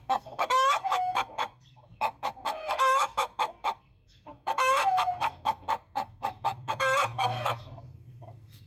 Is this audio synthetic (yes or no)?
yes